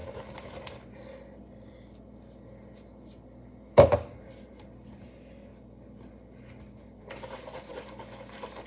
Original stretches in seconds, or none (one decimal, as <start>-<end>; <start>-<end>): 0.0-8.7